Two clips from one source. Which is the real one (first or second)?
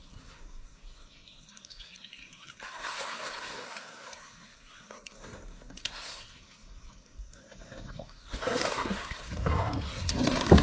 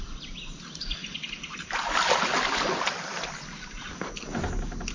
second